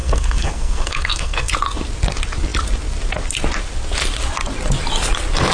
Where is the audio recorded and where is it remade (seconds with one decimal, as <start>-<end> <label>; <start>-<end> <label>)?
0.0-1.5 remade; 1.5-5.5 recorded